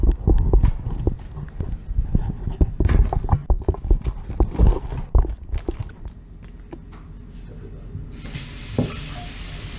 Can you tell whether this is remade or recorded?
recorded